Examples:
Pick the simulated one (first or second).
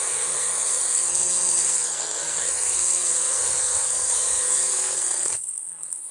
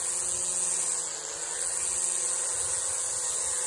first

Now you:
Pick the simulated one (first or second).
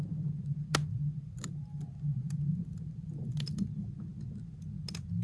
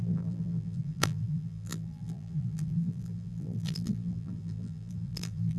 second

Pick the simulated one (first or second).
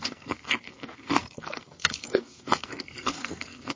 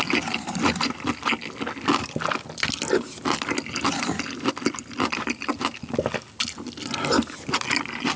first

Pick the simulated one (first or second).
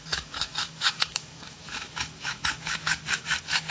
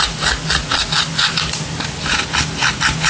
first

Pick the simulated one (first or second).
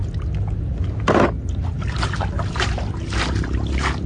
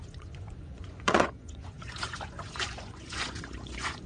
second